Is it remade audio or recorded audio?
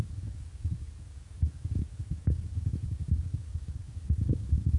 remade